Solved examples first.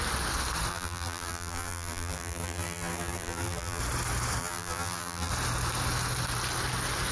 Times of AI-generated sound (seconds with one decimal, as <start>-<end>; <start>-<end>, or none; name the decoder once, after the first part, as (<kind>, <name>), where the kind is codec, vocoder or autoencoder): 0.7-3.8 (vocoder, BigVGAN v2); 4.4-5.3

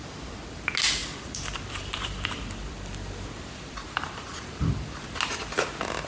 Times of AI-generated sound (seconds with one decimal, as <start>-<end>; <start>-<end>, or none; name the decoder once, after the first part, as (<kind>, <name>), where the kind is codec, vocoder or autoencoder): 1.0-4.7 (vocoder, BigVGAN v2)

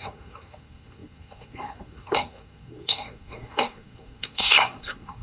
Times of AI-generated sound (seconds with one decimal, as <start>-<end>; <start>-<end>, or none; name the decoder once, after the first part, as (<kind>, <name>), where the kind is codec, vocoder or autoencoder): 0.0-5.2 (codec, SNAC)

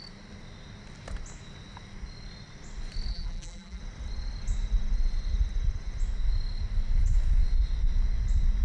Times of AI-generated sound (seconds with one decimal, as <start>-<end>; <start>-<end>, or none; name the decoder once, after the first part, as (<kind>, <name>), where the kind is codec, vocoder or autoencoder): 3.1-3.8 (vocoder, BigVGAN v2)